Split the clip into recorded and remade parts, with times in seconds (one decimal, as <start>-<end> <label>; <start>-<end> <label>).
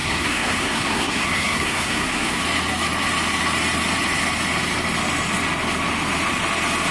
0.0-2.4 remade; 2.4-6.9 recorded